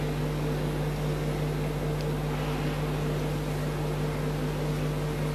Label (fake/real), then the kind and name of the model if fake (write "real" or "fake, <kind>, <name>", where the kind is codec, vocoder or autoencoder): real